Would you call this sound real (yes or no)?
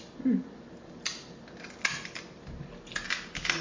yes